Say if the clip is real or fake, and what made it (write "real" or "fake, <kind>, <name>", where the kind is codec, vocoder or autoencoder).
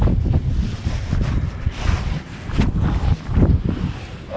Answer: real